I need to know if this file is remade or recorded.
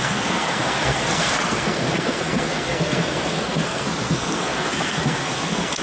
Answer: remade